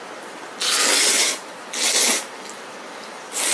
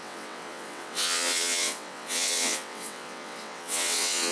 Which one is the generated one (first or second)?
second